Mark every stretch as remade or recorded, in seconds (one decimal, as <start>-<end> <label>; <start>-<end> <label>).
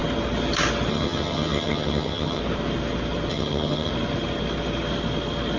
0.0-0.9 recorded; 0.9-2.4 remade; 2.4-3.3 recorded; 3.3-3.9 remade; 3.9-5.6 recorded